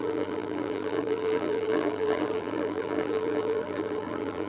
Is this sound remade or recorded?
remade